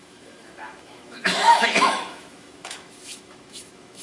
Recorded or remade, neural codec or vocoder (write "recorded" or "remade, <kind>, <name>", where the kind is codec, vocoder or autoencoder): remade, autoencoder, DAC-VAE